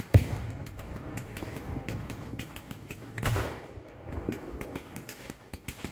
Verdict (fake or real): fake